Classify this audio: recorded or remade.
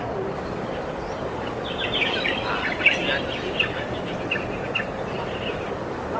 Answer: recorded